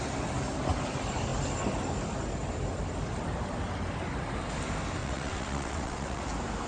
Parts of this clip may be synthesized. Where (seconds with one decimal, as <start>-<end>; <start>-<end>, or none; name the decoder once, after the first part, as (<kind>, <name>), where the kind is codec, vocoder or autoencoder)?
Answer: 5.0-6.2 (vocoder, WaveNeXt)